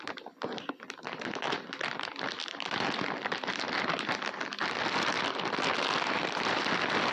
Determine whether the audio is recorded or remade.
recorded